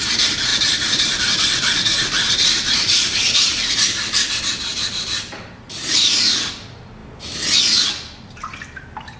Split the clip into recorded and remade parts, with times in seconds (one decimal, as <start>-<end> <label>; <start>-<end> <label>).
0.0-0.5 recorded; 0.5-4.3 remade; 4.3-4.7 recorded; 4.7-6.2 remade; 6.2-9.2 recorded